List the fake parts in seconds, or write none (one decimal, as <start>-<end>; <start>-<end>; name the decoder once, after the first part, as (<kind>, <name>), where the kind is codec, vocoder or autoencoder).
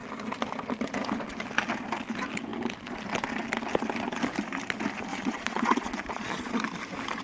5.1-6.5 (vocoder, Vocos)